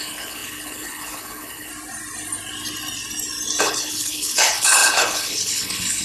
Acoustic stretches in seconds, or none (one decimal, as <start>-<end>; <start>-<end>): 1.7-3.6